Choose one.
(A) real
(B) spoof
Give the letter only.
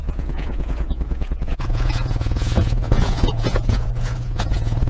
B